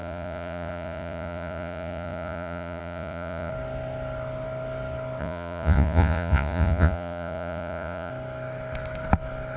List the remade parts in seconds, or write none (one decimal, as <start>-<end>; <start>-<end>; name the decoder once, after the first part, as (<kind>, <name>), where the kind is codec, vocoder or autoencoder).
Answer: 0.0-3.5 (vocoder, Vocos); 5.2-8.1